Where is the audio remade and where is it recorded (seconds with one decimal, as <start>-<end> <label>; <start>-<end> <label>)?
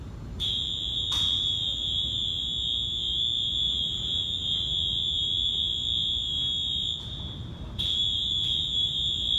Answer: 0.0-2.4 remade; 2.4-3.5 recorded; 3.5-5.7 remade; 5.7-7.1 recorded; 7.1-8.9 remade; 8.9-9.4 recorded